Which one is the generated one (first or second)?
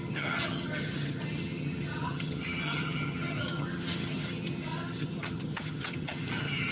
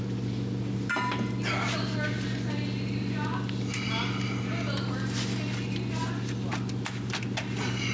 first